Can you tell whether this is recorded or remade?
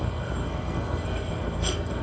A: remade